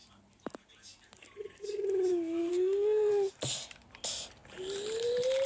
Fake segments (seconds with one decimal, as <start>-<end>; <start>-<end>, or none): 2.5-3.1